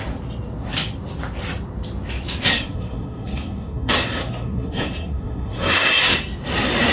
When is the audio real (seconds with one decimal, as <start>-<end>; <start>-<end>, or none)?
0.0-2.5; 5.9-6.9